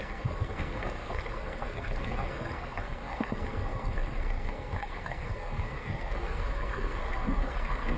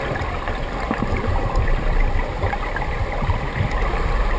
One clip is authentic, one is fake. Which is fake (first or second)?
first